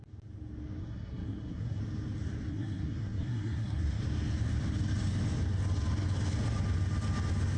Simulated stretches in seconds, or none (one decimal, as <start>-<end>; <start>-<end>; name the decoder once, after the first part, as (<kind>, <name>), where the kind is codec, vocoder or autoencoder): 0.8-1.8 (codec, SNAC); 2.5-4.0